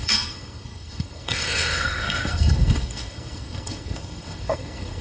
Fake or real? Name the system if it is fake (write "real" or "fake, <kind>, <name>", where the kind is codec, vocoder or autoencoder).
fake, codec, SNAC